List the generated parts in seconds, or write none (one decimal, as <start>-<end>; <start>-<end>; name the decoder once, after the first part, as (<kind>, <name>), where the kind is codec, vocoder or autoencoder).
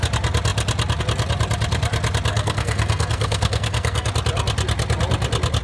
2.3-4.1 (codec, SNAC)